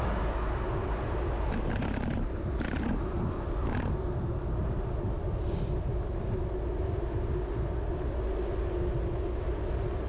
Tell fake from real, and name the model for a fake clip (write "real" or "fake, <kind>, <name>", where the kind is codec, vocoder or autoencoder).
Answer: real